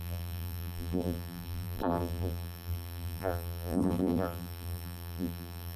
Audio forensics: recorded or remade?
remade